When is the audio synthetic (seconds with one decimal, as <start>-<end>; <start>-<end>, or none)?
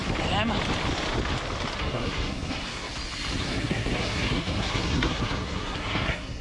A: 1.8-2.9; 3.4-6.4